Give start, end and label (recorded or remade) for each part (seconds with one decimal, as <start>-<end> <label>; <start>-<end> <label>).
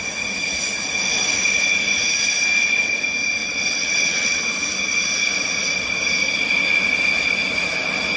0.0-3.4 recorded; 3.4-4.5 remade; 4.5-8.2 recorded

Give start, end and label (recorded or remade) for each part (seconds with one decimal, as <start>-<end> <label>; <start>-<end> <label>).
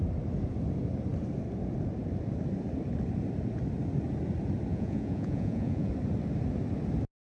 0.0-4.7 recorded; 4.7-5.9 remade; 5.9-7.2 recorded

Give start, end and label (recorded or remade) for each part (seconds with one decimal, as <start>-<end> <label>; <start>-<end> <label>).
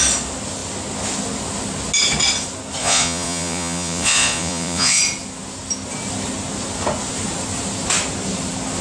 0.0-2.8 recorded; 2.8-5.0 remade; 5.0-8.8 recorded